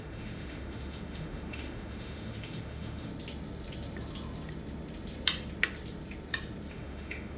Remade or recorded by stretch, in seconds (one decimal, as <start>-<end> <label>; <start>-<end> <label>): 0.0-3.1 remade; 3.1-6.7 recorded; 6.7-7.4 remade